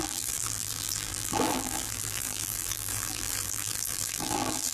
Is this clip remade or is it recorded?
remade